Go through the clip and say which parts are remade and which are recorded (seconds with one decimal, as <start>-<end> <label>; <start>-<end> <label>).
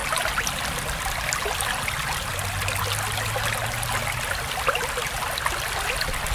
0.0-6.3 recorded